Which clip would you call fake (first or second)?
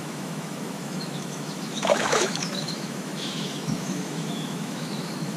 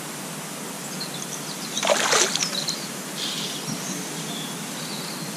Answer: first